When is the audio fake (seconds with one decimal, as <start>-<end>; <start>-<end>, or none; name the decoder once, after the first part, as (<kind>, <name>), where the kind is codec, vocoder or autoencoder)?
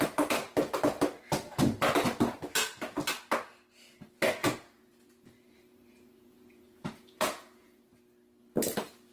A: 4.4-7.9 (vocoder, Vocos)